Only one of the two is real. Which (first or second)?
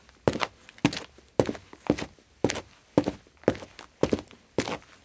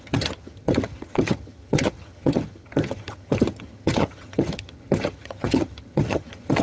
first